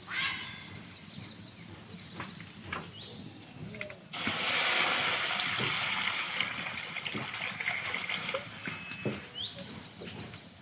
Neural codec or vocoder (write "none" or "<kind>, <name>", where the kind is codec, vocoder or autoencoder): none